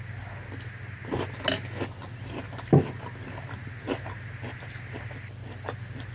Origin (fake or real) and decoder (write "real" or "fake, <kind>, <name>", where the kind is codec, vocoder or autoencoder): real